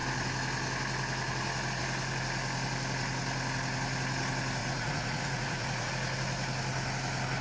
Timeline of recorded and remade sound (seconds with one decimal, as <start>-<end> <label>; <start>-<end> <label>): 0.0-4.6 recorded; 4.6-5.9 remade; 5.9-7.4 recorded